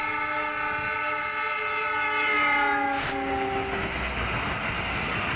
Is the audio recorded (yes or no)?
yes